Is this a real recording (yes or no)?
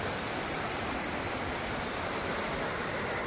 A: yes